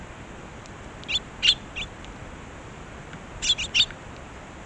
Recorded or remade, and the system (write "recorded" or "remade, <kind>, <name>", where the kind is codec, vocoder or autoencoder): recorded